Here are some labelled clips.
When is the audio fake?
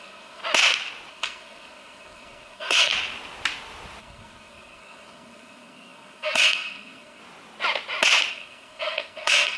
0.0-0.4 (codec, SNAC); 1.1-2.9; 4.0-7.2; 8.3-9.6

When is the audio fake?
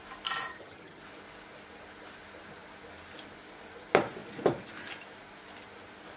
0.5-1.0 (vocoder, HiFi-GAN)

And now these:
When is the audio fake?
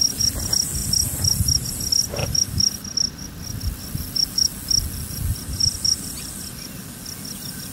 none